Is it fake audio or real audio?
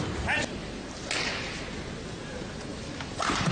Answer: real